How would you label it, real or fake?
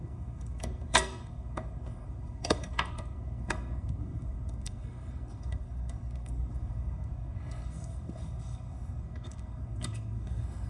fake